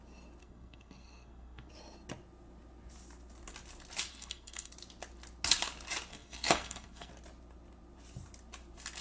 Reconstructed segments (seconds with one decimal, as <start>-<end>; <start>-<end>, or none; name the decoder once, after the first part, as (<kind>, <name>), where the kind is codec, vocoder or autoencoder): 0.4-1.7 (codec, SNAC); 4.1-4.7; 6.1-7.1